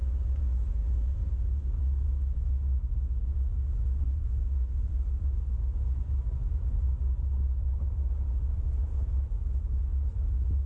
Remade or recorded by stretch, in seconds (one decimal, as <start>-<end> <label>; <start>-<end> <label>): 0.0-0.8 recorded; 0.8-1.3 remade; 1.3-6.4 recorded; 6.4-7.0 remade; 7.0-10.7 recorded